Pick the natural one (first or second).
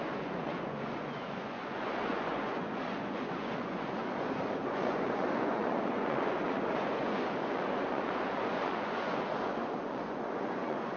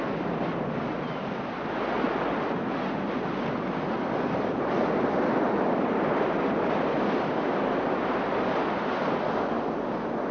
second